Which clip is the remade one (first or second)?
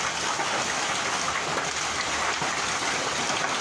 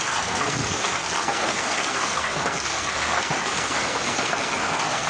second